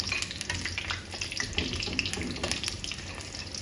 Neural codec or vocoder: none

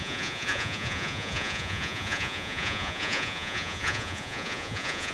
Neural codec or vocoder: vocoder, Vocos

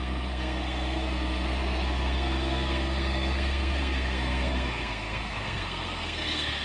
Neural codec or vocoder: codec, SNAC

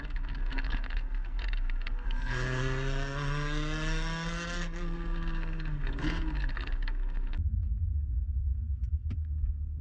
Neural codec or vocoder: codec, SNAC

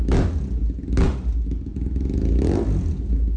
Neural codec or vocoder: none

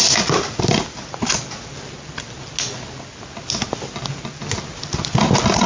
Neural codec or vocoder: none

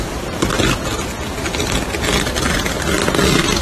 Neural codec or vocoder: none